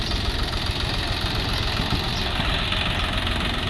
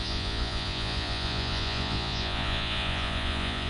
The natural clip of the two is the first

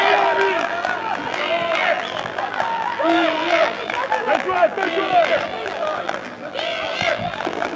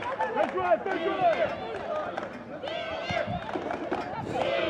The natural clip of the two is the second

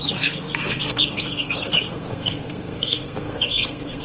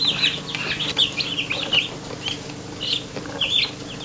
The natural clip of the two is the second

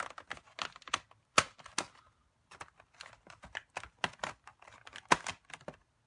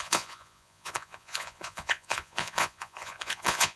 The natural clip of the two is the first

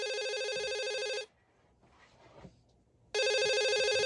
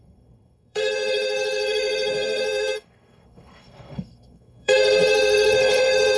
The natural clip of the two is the first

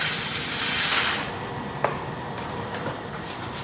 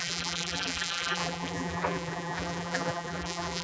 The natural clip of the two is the first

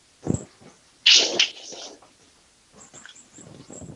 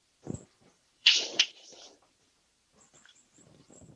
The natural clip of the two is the first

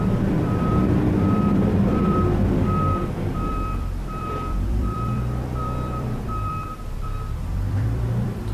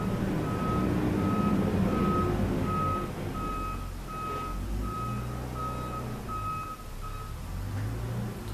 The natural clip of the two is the second